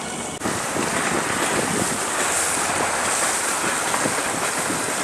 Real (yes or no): yes